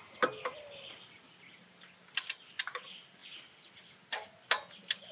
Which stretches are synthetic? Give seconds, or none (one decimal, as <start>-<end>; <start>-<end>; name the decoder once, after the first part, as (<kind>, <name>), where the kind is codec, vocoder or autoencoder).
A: none